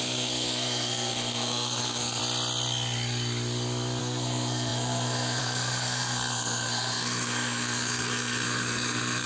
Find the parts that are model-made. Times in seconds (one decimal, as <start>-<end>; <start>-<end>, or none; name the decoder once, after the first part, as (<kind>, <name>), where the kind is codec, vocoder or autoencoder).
0.0-2.2 (codec, SNAC); 4.0-9.3